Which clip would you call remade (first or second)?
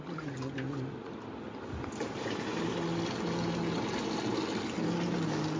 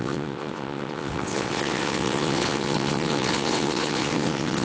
second